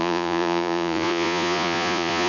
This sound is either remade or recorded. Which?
remade